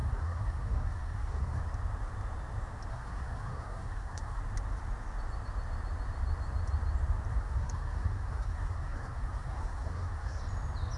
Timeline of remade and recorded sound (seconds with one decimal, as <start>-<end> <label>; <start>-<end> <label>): 0.0-1.6 remade; 1.6-2.9 recorded; 2.9-4.4 remade; 4.4-7.3 recorded; 7.3-10.4 remade; 10.4-11.0 recorded